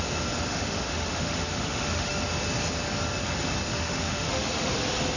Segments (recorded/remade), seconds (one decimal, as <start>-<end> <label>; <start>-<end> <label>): 0.0-0.5 recorded; 0.5-2.2 remade; 2.2-3.7 recorded; 3.7-4.8 remade; 4.8-5.2 recorded